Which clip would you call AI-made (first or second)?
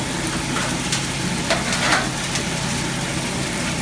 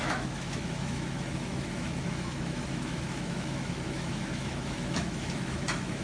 second